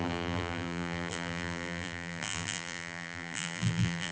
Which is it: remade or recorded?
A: remade